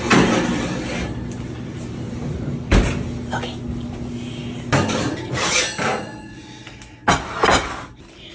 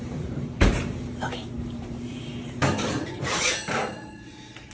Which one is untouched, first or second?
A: first